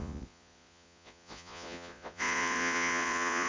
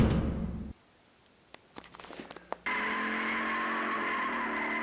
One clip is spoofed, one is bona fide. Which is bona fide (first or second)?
second